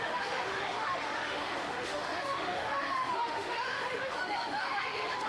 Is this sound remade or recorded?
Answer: remade